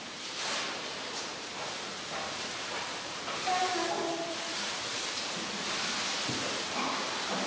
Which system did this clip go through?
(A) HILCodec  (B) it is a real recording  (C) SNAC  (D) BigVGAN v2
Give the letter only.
D